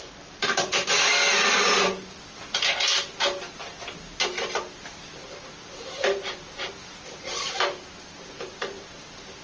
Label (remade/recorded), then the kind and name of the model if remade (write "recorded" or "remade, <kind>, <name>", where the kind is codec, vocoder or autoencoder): remade, vocoder, BigVGAN v2